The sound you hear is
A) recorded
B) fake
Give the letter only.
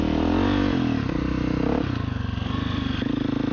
A